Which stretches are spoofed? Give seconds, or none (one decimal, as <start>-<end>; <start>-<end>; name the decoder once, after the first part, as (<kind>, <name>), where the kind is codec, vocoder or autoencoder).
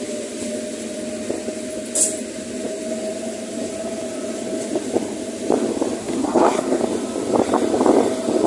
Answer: 6.0-6.8 (codec, SNAC)